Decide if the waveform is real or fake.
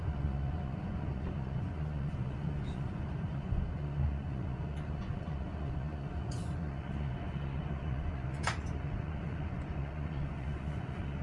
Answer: fake